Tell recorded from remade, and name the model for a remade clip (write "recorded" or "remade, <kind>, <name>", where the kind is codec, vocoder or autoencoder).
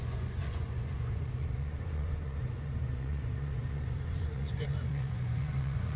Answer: remade, vocoder, Vocos